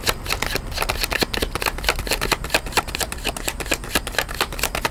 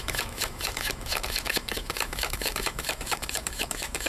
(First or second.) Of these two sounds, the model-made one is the second